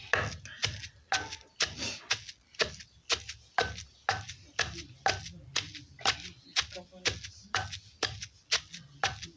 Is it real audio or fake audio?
real